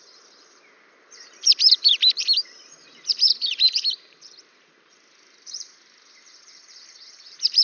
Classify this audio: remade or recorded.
remade